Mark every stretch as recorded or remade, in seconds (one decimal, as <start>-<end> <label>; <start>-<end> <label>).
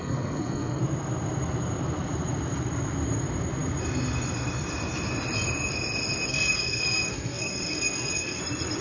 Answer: 0.0-0.8 remade; 0.8-6.3 recorded; 6.3-8.4 remade; 8.4-8.8 recorded